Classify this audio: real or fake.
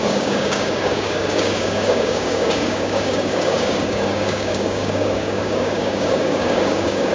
fake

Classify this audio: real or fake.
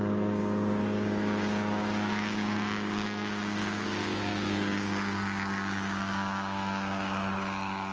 fake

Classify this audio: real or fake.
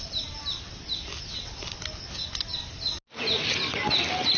real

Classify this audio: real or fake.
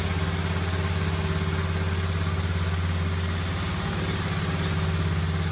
real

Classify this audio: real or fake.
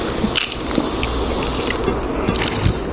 real